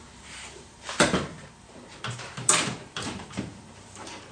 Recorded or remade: remade